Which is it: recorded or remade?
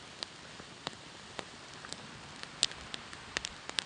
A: recorded